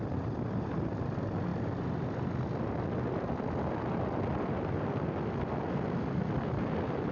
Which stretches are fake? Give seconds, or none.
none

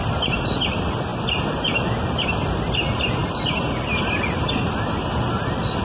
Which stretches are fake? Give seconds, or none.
none

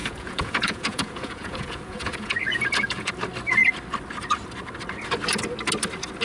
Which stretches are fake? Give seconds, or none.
0.0-3.1 (vocoder, Vocos)

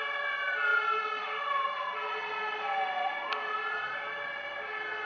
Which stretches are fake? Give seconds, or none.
none

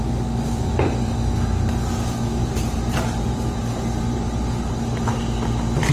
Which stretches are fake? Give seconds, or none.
2.4-4.7 (vocoder, BigVGAN v2)

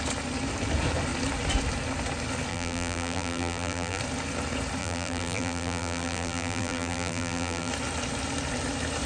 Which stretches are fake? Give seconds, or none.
2.5-4.0 (vocoder, BigVGAN v2); 4.8-7.7

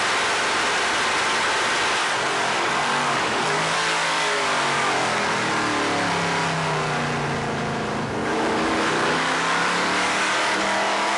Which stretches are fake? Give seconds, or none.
2.0-5.5 (codec, DAC); 8.2-11.2